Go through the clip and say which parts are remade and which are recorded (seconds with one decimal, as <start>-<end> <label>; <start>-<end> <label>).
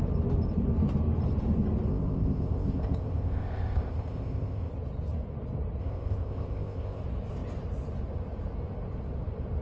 0.0-1.9 recorded; 1.9-4.7 remade; 4.7-5.8 recorded; 5.8-7.0 remade; 7.0-9.6 recorded